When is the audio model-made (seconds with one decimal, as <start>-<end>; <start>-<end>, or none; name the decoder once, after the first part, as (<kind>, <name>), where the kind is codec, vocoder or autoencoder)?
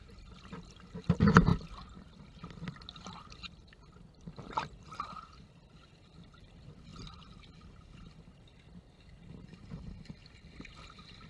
none